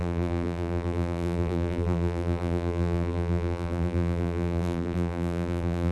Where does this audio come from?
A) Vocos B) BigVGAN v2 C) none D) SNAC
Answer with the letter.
B